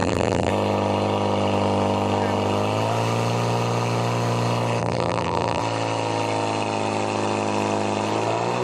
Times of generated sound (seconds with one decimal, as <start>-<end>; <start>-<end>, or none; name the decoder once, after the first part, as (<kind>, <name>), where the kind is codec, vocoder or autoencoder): 0.0-0.5 (vocoder, BigVGAN v2); 4.8-5.6